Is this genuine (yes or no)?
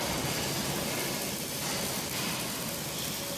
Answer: yes